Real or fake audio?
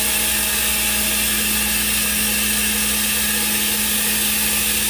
real